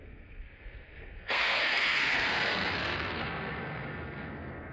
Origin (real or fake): fake